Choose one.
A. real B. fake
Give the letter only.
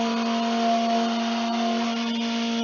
A